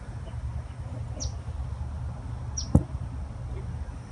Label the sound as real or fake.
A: real